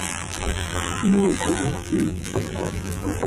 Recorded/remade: remade